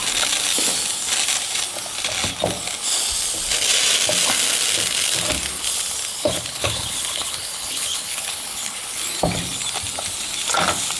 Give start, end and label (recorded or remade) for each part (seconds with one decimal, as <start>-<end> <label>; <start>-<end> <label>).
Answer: 0.0-6.1 recorded; 6.1-9.0 remade; 9.0-11.0 recorded